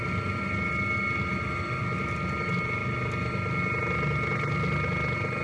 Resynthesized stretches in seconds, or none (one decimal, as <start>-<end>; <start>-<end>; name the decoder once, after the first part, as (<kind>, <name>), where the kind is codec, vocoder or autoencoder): none